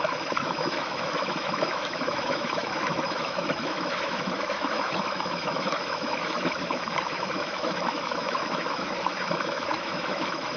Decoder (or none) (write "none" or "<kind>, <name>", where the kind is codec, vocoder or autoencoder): autoencoder, DAC-VAE